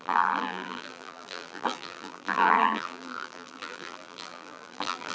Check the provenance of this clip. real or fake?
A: fake